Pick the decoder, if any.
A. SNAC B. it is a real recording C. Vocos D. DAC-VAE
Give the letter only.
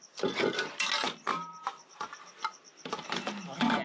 B